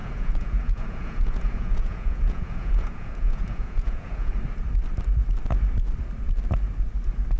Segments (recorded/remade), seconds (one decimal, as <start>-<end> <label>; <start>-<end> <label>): 0.0-4.3 remade; 4.3-7.4 recorded